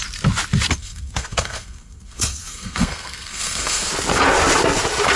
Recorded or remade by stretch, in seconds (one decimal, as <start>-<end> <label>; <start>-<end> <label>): 0.0-0.8 recorded; 0.8-3.9 remade; 3.9-5.2 recorded